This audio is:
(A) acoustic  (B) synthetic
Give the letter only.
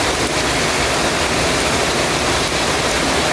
A